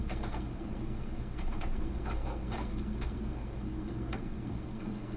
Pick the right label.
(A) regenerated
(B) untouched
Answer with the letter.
A